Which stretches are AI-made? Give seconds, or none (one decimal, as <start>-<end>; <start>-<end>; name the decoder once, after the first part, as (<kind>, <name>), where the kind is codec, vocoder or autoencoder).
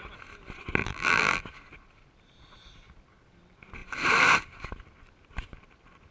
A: 0.8-1.4 (vocoder, BigVGAN v2)